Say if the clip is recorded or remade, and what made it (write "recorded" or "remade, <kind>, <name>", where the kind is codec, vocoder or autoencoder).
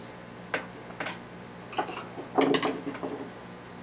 recorded